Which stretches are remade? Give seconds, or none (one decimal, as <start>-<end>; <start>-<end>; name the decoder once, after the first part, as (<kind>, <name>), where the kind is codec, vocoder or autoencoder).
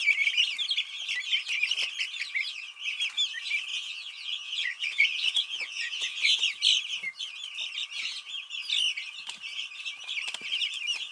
3.7-6.4 (vocoder, Vocos)